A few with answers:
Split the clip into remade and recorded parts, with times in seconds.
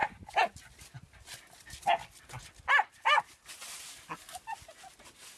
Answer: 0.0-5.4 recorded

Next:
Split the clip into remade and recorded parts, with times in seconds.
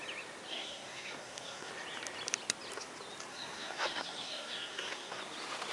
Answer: 0.0-0.5 recorded; 0.5-1.7 remade; 1.7-3.3 recorded; 3.3-5.2 remade; 5.2-5.7 recorded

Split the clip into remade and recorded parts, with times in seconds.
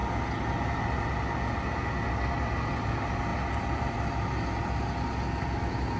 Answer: 0.0-6.0 recorded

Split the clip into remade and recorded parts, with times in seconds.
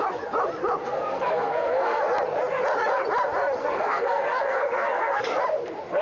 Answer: 0.0-0.8 recorded; 0.8-2.0 remade; 2.0-3.6 recorded; 3.6-5.2 remade; 5.2-6.0 recorded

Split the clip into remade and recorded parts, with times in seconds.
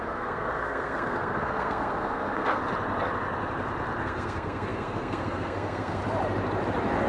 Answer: 0.0-2.6 remade; 2.6-4.0 recorded; 4.0-6.0 remade; 6.0-7.1 recorded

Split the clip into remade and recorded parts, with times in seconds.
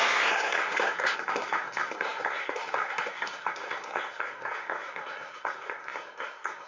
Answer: 0.0-6.7 remade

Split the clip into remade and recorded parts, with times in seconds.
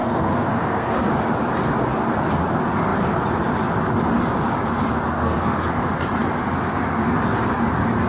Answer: 0.0-1.1 remade; 1.1-5.1 recorded; 5.1-5.7 remade; 5.7-8.1 recorded